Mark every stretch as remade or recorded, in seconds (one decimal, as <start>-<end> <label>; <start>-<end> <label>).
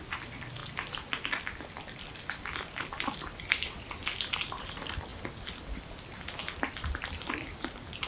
0.0-8.1 recorded